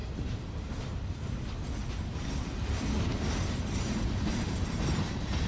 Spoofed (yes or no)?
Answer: no